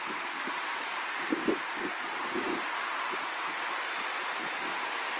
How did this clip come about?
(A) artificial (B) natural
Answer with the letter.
B